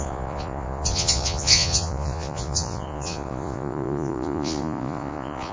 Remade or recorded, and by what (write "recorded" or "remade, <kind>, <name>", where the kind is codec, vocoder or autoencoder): remade, vocoder, Vocos